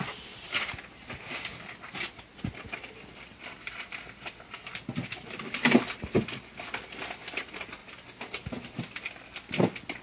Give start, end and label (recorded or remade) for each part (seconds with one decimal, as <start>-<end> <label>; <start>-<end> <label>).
0.0-10.0 recorded